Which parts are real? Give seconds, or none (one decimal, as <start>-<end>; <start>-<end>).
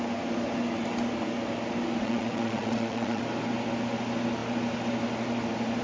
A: 0.0-2.0; 3.2-5.8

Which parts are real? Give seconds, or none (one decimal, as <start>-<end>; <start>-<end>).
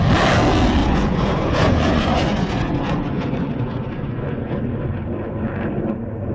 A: 0.0-0.8; 4.6-6.3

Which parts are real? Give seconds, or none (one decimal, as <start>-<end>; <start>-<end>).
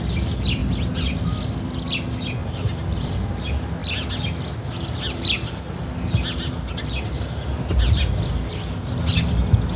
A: 0.0-2.4; 3.1-9.8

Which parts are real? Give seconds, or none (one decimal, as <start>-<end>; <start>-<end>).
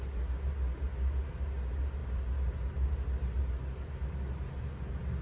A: 0.0-5.2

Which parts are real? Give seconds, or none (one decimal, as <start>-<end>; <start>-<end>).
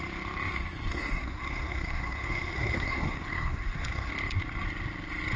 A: 0.0-0.9; 4.1-5.4